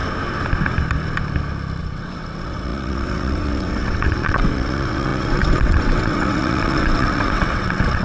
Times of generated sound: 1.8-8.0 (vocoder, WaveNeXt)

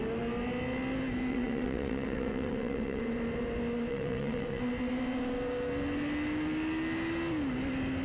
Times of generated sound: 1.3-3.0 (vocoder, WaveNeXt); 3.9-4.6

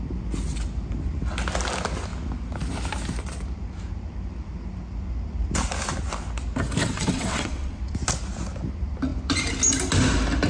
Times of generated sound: 6.8-7.8 (vocoder, WaveNeXt)

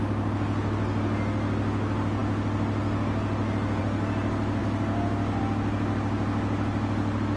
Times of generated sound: none

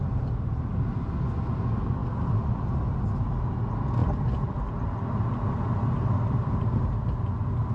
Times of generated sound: none